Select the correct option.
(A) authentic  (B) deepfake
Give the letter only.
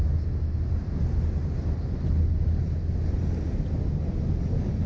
A